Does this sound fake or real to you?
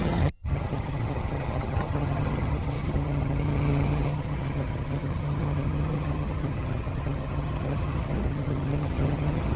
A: fake